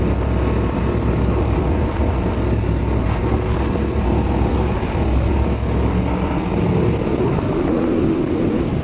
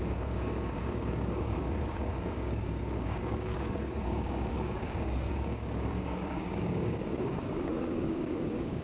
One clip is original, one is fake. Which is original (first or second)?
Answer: first